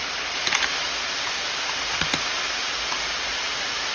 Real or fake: real